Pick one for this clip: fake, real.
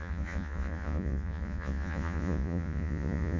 fake